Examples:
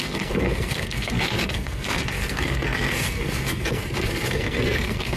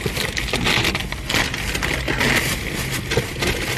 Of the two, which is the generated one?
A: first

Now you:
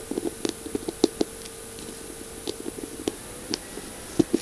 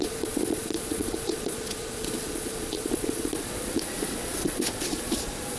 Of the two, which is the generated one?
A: second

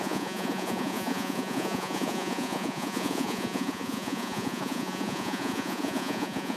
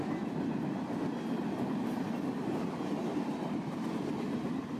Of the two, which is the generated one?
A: first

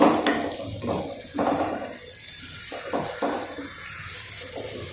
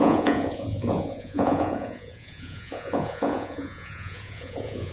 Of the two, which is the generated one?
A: second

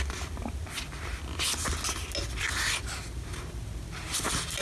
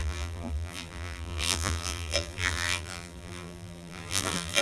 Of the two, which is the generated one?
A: second